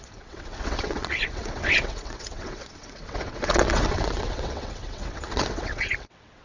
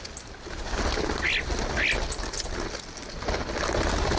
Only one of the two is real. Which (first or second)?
second